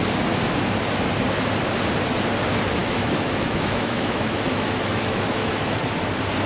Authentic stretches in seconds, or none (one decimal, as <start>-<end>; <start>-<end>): 0.0-2.8; 5.8-6.5